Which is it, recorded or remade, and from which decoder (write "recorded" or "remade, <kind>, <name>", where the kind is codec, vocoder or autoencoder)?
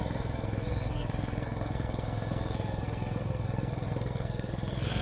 remade, codec, SNAC